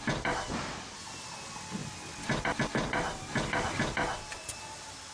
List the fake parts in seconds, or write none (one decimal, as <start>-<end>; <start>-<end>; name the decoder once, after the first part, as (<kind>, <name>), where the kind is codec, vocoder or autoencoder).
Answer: none